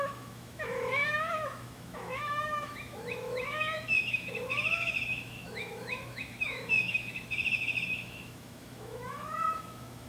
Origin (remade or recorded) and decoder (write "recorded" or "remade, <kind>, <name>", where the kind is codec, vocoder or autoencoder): remade, autoencoder, DAC-VAE